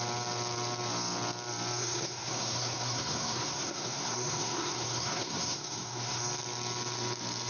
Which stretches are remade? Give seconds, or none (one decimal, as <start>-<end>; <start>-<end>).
1.8-6.2